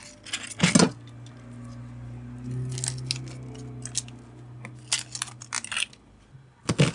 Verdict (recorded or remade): recorded